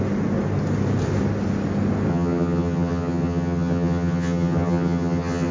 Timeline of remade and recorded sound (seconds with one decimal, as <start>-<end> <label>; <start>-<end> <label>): 0.0-2.1 recorded; 2.1-5.5 remade